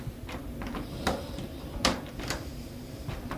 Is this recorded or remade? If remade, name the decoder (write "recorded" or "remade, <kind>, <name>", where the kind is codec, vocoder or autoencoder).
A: recorded